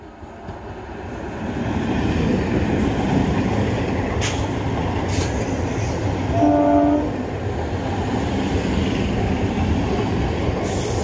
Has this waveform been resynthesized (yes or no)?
no